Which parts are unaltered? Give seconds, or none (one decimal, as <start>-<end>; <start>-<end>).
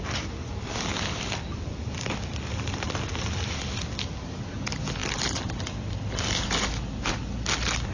0.0-0.4; 4.2-5.0; 6.5-7.9